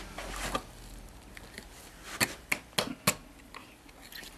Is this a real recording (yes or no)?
yes